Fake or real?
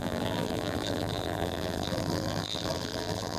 fake